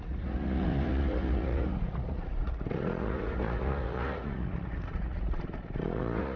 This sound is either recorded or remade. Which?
remade